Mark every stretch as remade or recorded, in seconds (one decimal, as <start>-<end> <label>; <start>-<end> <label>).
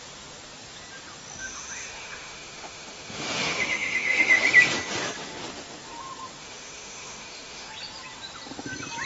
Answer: 0.0-1.4 recorded; 1.4-4.4 remade; 4.4-6.4 recorded; 6.4-7.7 remade; 7.7-9.1 recorded